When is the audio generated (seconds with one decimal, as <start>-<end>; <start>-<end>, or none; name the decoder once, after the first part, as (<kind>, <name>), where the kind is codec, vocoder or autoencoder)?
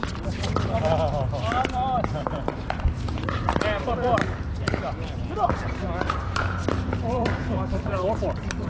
1.7-4.2 (vocoder, BigVGAN v2); 6.7-7.4